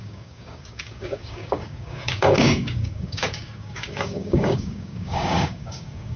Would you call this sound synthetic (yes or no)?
yes